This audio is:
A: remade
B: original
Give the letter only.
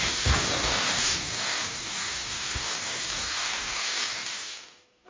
A